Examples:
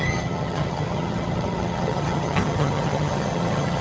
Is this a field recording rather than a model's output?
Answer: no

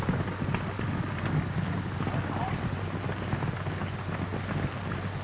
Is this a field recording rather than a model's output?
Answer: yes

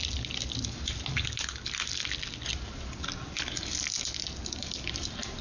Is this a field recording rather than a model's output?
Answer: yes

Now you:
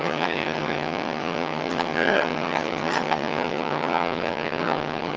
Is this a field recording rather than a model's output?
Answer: no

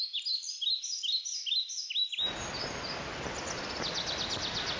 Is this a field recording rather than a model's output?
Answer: yes